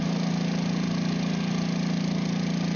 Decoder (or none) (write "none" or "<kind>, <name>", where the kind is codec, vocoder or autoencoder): none